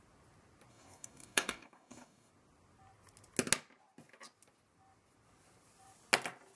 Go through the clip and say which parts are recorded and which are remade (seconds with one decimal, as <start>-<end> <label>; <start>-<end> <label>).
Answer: 0.0-0.7 recorded; 0.7-2.3 remade; 2.3-6.5 recorded